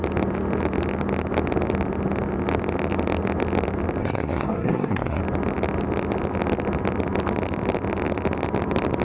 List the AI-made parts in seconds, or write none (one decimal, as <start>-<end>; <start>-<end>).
4.0-5.2

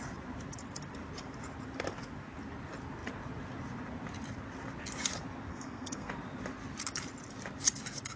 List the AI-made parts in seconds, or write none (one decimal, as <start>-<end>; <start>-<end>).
5.5-6.1

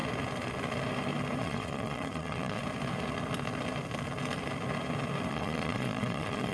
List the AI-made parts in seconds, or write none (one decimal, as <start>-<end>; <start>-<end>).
1.4-2.6; 5.3-6.5